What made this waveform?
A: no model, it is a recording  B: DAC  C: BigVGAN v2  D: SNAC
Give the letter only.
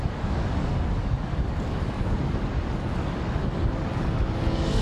B